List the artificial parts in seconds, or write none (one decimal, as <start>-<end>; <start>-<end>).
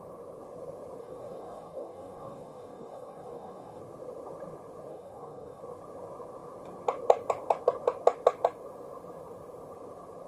1.0-3.8; 4.9-5.6